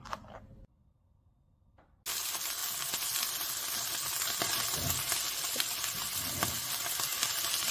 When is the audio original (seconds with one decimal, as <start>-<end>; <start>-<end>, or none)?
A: 0.0-7.7